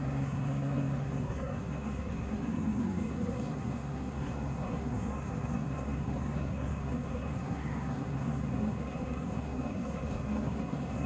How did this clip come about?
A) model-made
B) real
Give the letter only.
A